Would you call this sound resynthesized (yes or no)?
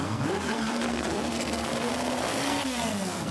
yes